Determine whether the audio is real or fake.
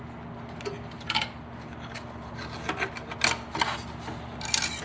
real